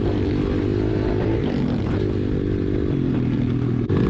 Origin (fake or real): real